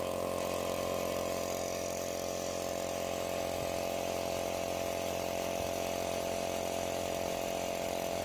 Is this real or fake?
real